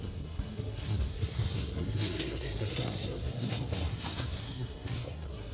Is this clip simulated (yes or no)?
yes